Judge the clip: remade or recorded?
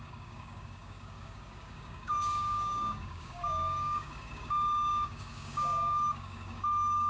remade